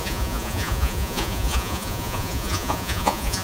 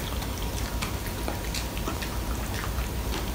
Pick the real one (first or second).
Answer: second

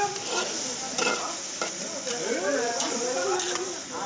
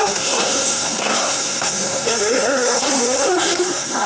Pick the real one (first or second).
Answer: first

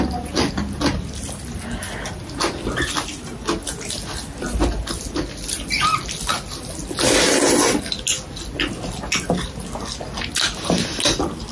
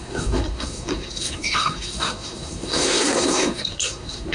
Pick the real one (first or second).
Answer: first